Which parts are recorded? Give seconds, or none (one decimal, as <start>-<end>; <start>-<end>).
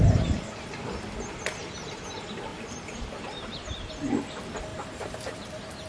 0.0-1.6; 2.1-2.5; 3.9-4.7